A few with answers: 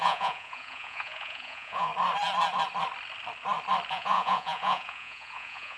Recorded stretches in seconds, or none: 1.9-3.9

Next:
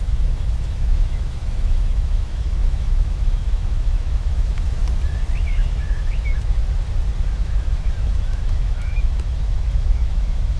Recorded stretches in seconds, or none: 4.8-5.4; 6.6-7.4